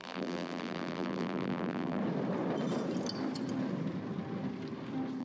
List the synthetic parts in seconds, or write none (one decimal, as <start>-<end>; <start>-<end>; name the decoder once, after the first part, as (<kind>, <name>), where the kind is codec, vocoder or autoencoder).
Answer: 0.0-2.0 (vocoder, BigVGAN v2)